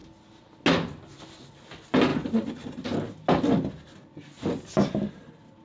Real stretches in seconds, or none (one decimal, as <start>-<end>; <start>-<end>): 0.0-5.6